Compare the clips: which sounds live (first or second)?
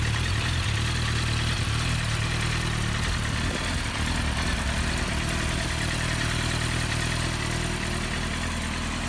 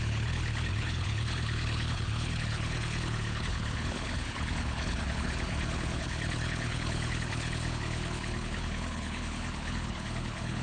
first